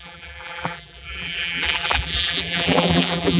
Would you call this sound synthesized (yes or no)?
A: yes